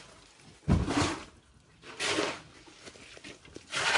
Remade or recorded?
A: recorded